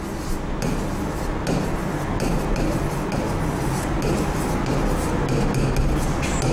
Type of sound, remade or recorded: recorded